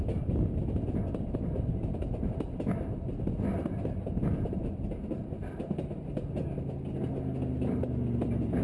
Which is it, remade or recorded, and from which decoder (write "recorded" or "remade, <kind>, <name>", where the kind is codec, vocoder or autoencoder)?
recorded